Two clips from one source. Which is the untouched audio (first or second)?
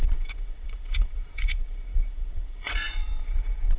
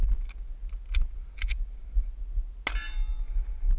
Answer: second